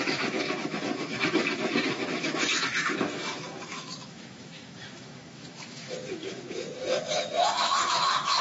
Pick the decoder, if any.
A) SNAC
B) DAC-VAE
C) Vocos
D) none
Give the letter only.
B